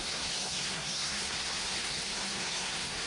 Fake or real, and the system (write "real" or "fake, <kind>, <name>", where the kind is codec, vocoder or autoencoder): fake, codec, SNAC